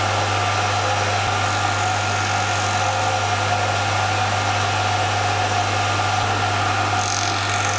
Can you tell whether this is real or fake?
real